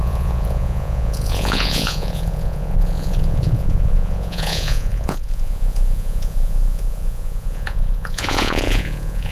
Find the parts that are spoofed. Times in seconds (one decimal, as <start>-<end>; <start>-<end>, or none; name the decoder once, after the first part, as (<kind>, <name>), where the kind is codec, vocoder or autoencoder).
0.0-9.3 (vocoder, Vocos)